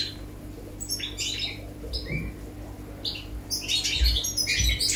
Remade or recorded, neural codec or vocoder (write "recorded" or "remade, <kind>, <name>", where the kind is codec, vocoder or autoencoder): recorded